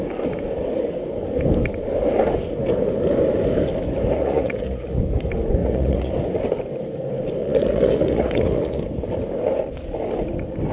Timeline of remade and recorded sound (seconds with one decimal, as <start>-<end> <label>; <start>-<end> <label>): 0.0-4.2 recorded; 4.2-5.0 remade; 5.0-5.6 recorded; 5.6-6.1 remade; 6.1-7.4 recorded; 7.4-8.8 remade; 8.8-10.7 recorded